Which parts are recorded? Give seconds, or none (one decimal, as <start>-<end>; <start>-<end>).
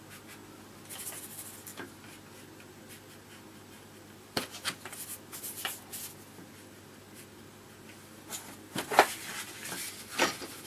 0.0-10.7